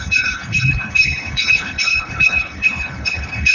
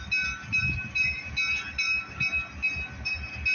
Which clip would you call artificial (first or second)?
first